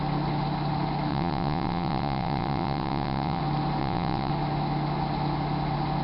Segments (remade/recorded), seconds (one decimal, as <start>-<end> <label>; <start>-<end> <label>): 0.0-1.1 recorded; 1.1-3.4 remade; 3.4-3.8 recorded; 3.8-4.3 remade; 4.3-6.0 recorded